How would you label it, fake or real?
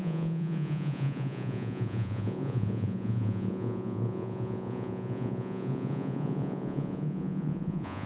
fake